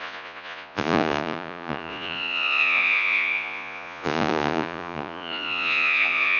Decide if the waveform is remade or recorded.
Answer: remade